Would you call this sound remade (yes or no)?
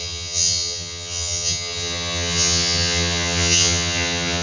yes